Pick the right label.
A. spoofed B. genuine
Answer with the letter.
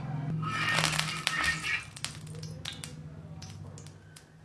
B